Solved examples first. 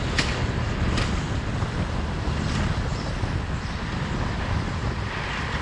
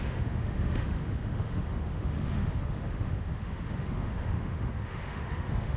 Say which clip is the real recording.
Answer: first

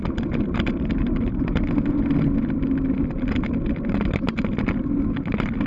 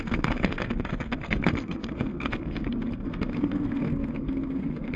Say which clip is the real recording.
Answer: first